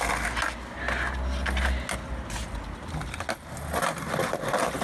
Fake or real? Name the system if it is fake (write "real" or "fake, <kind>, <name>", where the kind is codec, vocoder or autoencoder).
real